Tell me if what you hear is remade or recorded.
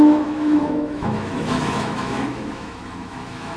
remade